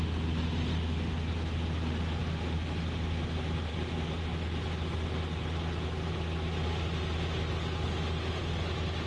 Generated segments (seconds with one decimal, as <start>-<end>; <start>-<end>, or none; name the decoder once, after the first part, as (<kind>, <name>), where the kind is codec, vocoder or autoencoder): none